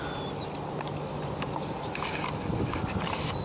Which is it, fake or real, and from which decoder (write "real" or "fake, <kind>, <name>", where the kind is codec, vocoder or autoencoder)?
real